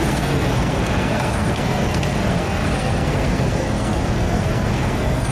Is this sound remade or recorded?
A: remade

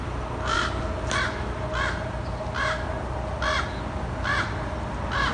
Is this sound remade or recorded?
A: recorded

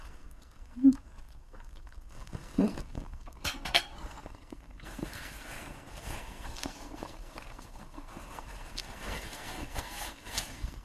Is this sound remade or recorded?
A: remade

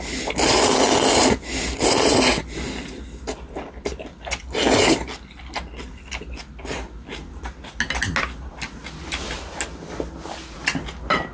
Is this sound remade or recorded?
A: recorded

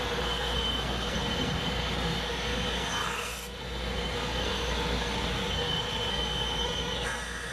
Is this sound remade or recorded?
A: remade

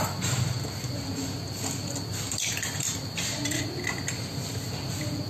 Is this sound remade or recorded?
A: recorded